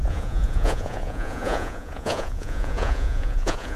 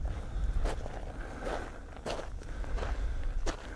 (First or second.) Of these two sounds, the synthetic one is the first